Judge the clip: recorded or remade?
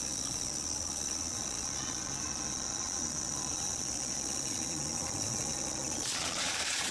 remade